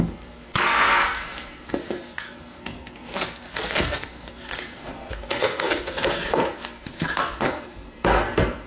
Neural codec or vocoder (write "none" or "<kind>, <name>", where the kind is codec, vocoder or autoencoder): codec, SNAC